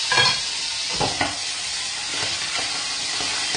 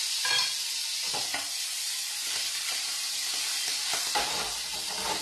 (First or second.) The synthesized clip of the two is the second